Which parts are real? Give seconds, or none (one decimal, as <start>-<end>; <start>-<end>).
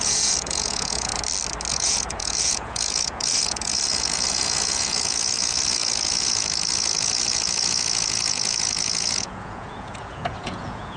1.1-1.7